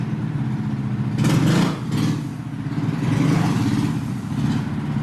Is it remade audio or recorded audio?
recorded